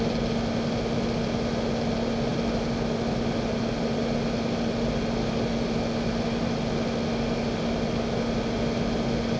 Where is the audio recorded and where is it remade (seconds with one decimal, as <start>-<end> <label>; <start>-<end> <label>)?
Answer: 0.0-9.4 recorded